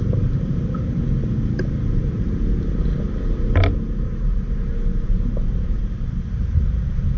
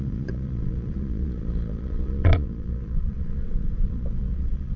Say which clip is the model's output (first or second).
second